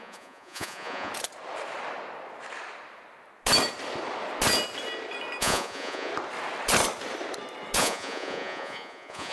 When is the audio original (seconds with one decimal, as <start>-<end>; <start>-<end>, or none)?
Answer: 1.1-5.4; 6.1-7.8